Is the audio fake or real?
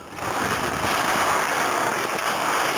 real